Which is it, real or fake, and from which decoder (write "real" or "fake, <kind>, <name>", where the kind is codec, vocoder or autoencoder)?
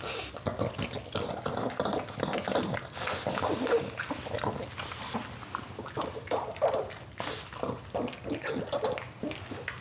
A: real